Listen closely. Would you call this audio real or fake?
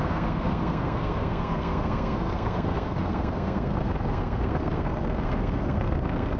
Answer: fake